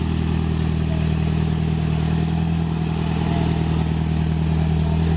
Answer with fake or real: real